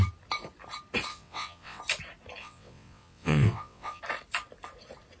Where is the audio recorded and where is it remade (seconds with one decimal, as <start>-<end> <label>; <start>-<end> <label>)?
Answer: 0.0-1.1 recorded; 1.1-1.8 remade; 1.8-2.4 recorded; 2.4-4.0 remade; 4.0-5.2 recorded